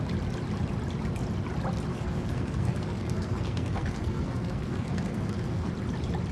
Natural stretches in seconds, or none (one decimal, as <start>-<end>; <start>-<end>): 0.0-1.9; 5.7-6.3